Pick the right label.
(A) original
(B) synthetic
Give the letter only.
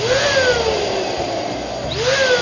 A